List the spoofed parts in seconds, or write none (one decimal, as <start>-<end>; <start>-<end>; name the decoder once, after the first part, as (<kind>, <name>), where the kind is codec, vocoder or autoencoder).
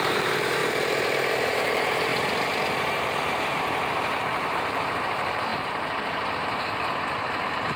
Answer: 0.0-0.6 (vocoder, BigVGAN v2); 1.3-2.1; 2.8-7.8